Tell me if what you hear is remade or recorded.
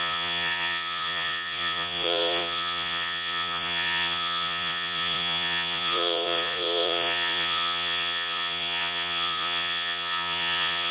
remade